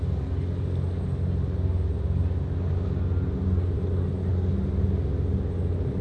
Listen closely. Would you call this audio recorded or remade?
recorded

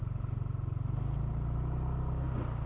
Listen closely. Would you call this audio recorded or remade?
recorded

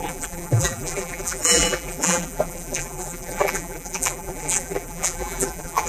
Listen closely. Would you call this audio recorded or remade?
remade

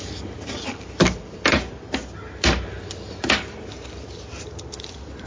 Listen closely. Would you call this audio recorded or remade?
recorded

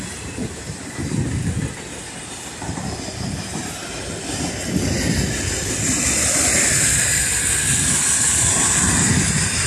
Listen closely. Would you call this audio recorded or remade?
recorded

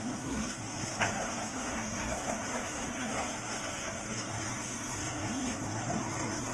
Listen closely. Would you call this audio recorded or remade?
remade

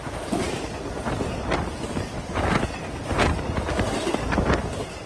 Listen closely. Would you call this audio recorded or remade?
recorded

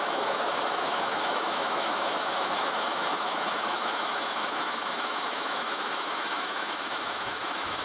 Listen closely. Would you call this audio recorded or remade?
remade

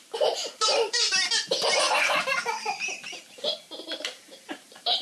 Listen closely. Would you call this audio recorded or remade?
remade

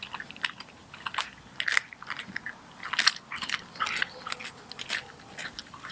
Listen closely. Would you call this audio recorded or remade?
recorded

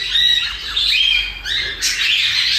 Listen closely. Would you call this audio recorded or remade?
recorded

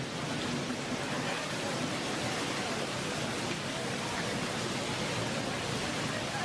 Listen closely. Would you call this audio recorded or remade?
recorded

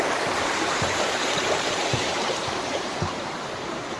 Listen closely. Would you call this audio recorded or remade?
remade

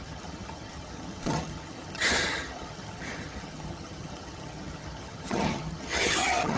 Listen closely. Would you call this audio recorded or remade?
remade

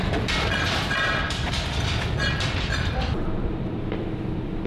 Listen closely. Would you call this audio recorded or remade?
remade